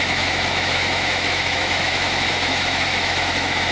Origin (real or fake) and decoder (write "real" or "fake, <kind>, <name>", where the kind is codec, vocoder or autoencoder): fake, autoencoder, DAC-VAE